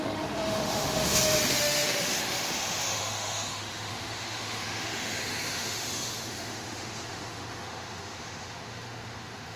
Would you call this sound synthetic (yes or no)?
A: yes